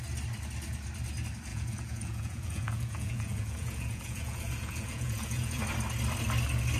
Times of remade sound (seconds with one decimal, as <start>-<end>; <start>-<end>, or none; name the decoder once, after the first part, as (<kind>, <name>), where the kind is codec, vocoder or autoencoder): 1.5-5.6 (vocoder, Vocos)